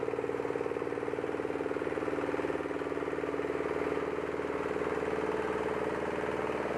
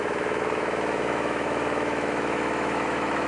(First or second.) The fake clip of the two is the second